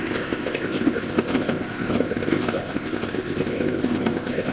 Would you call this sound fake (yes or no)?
yes